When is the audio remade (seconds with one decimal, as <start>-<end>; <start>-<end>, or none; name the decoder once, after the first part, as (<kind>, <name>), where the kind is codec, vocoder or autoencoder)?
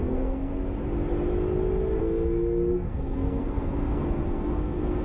0.0-0.5 (codec, SNAC); 2.0-5.0